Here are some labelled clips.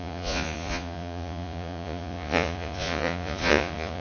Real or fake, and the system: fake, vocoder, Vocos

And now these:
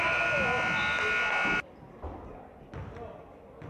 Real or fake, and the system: real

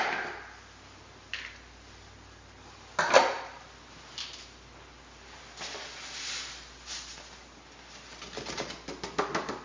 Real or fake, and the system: real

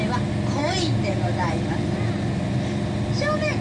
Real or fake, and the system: real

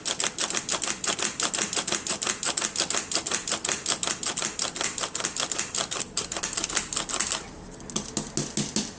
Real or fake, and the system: real